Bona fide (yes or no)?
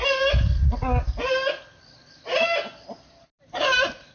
yes